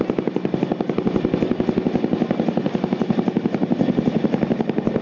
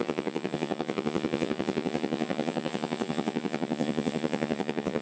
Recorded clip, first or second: first